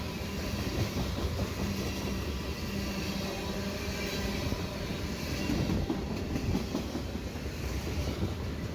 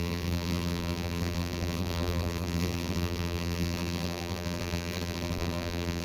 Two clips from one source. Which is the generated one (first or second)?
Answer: second